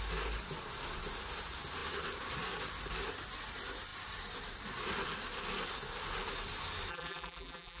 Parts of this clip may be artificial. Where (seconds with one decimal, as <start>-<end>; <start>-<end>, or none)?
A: 6.9-7.8